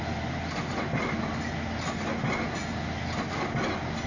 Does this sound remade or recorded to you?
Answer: recorded